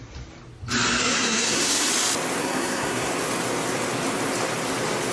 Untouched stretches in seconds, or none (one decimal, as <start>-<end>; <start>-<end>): 0.0-1.0; 1.9-2.4; 3.1-5.1